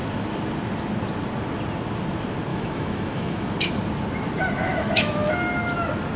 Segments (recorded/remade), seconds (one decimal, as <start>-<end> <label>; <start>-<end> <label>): 0.0-2.5 recorded; 2.5-3.7 remade; 3.7-4.7 recorded; 4.7-5.3 remade; 5.3-6.2 recorded